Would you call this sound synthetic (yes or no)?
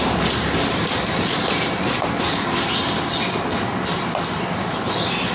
no